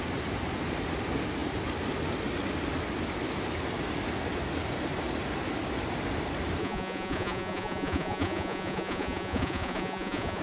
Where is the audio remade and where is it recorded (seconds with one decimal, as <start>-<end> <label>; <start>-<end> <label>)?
0.0-6.6 recorded; 6.6-10.4 remade